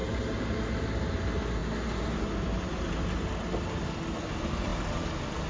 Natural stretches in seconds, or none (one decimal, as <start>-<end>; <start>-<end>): 1.1-5.5